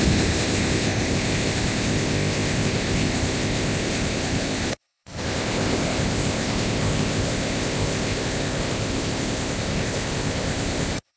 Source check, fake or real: fake